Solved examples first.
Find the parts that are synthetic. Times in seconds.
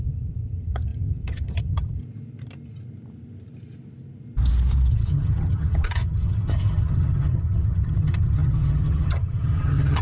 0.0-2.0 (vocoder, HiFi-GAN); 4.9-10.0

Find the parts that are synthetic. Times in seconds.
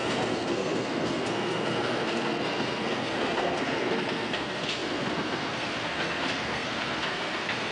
0.0-7.7 (codec, SNAC)